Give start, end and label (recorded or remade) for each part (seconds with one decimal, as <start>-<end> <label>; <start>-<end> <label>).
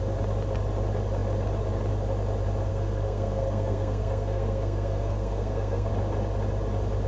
0.0-2.7 recorded; 2.7-5.9 remade; 5.9-7.1 recorded